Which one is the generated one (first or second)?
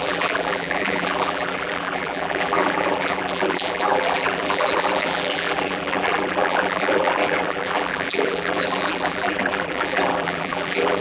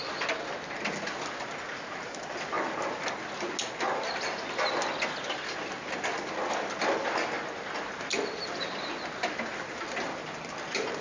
first